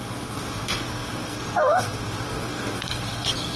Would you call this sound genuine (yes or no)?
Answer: no